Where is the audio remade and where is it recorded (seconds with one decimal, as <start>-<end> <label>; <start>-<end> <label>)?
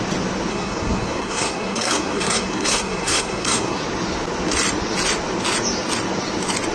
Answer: 0.0-0.5 recorded; 0.5-3.8 remade; 3.8-6.7 recorded